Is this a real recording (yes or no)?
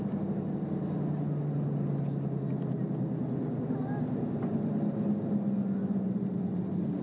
yes